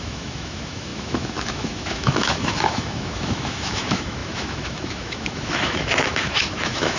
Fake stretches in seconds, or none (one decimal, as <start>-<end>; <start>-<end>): 0.0-7.0